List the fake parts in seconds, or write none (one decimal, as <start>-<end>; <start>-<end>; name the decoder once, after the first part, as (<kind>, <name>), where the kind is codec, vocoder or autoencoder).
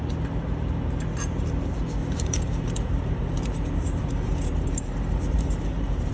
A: 2.0-6.1 (vocoder, BigVGAN v2)